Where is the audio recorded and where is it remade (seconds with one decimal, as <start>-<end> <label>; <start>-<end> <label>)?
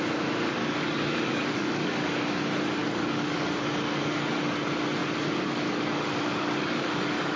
0.0-0.6 recorded; 0.6-2.4 remade; 2.4-2.8 recorded; 2.8-4.4 remade; 4.4-5.0 recorded; 5.0-7.4 remade